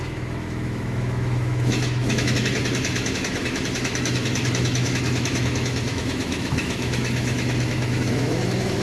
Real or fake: fake